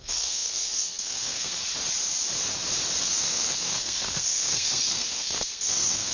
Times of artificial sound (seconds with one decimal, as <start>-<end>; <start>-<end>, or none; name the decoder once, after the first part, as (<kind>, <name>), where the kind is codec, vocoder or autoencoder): 0.0-1.6 (codec, SNAC); 3.0-6.1